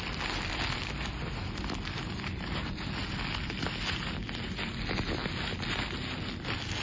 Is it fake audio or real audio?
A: real